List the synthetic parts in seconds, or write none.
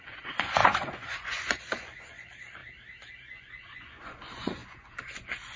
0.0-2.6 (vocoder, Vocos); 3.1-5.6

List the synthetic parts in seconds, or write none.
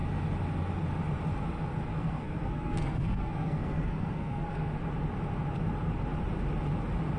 1.9-4.7 (codec, SNAC)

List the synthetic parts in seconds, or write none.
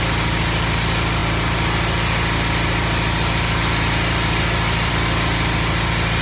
none